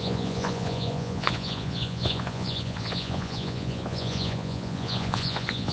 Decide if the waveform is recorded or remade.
remade